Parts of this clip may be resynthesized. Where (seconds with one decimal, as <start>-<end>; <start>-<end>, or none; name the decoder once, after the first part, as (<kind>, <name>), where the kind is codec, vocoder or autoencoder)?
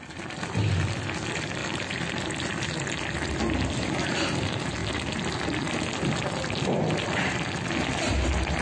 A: 1.6-3.4 (vocoder, BigVGAN v2)